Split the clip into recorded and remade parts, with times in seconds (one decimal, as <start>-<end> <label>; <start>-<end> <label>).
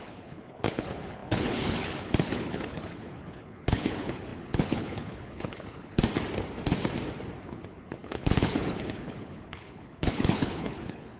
0.0-6.0 remade; 6.0-7.4 recorded; 7.4-11.2 remade